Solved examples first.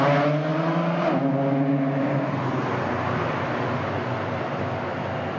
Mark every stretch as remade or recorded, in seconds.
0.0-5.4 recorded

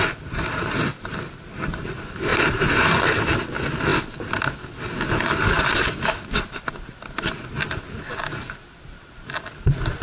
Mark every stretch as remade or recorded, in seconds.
0.0-10.0 recorded

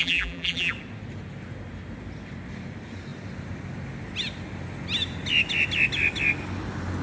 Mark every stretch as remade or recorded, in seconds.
0.0-0.7 remade; 0.7-7.0 recorded

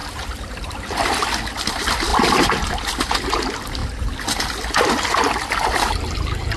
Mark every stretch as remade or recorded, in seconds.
0.0-1.0 remade; 1.0-2.1 recorded; 2.1-2.7 remade; 2.7-6.6 recorded

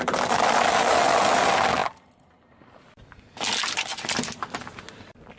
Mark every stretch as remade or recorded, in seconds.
0.0-5.4 recorded

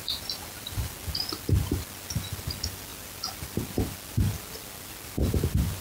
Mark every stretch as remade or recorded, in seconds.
0.0-0.9 remade; 0.9-5.8 recorded

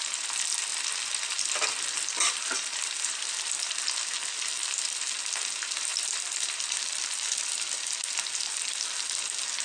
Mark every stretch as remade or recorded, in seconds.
0.0-0.7 recorded; 0.7-3.3 remade; 3.3-5.9 recorded; 5.9-8.7 remade; 8.7-9.6 recorded

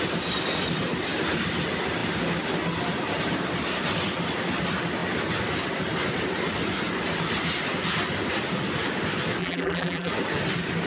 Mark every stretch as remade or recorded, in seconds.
0.0-9.4 recorded; 9.4-10.1 remade; 10.1-10.9 recorded